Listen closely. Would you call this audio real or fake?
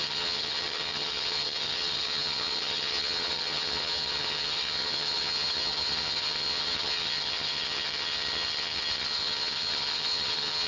fake